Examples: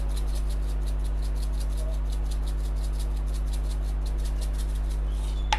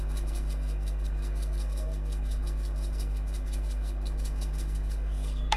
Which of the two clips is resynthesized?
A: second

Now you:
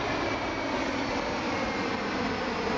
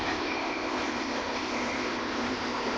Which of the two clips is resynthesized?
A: second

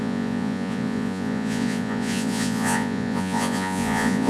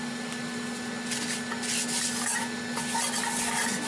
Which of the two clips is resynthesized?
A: first